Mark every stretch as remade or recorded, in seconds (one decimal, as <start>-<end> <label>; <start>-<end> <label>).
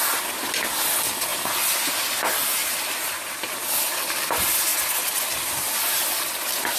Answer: 0.0-1.3 recorded; 1.3-1.9 remade; 1.9-2.6 recorded; 2.6-3.5 remade; 3.5-6.8 recorded